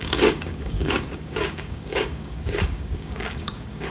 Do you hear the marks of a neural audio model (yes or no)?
yes